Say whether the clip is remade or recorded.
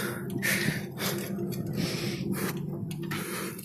recorded